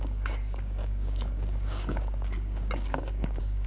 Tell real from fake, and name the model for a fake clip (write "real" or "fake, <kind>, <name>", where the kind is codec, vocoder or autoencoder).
fake, codec, DAC